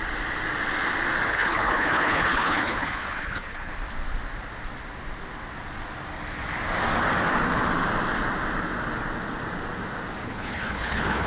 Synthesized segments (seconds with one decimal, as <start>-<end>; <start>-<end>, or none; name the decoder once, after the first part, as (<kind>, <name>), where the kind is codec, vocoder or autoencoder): 1.3-3.7 (codec, HILCodec); 10.2-11.3

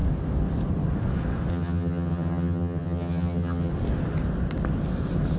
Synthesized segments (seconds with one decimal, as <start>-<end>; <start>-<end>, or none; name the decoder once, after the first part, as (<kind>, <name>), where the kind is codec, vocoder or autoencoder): 1.5-3.7 (vocoder, HiFi-GAN)